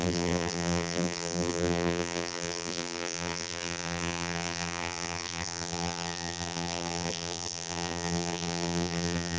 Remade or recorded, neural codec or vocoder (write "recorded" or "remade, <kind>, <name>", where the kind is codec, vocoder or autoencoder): remade, vocoder, BigVGAN v2